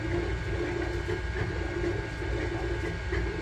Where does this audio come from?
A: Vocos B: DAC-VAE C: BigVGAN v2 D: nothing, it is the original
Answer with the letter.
D